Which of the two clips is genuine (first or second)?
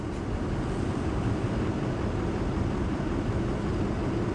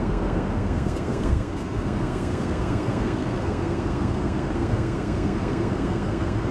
first